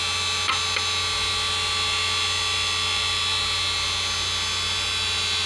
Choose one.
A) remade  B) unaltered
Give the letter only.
B